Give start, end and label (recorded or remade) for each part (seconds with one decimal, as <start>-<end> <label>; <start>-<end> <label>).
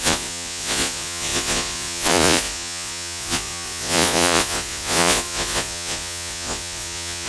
0.0-7.3 remade